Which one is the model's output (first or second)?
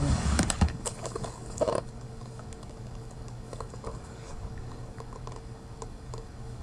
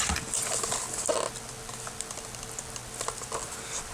first